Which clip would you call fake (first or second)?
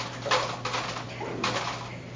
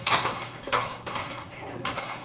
second